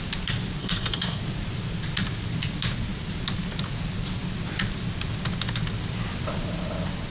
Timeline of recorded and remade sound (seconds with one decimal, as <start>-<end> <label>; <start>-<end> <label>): 0.0-0.6 recorded; 0.6-1.2 remade; 1.2-7.1 recorded